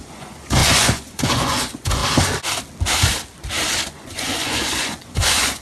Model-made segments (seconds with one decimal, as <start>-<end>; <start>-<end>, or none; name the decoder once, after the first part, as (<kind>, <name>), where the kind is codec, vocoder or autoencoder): 0.0-2.0 (vocoder, Vocos); 3.9-5.6